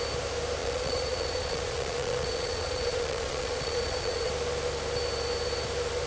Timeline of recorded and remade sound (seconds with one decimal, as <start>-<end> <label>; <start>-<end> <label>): 0.0-0.6 recorded; 0.6-4.3 remade; 4.3-6.1 recorded